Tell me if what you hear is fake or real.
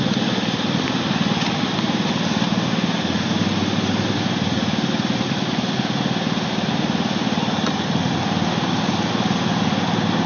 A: real